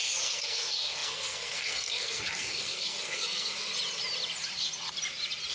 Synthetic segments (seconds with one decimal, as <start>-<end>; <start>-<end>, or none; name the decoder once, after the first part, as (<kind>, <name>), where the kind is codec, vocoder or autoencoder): 0.0-3.7 (codec, SNAC)